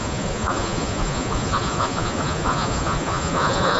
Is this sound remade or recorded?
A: remade